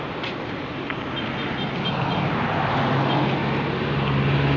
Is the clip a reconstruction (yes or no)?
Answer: no